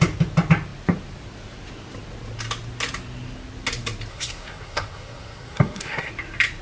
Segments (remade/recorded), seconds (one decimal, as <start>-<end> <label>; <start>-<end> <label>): 0.0-4.1 recorded; 4.1-6.1 remade; 6.1-6.6 recorded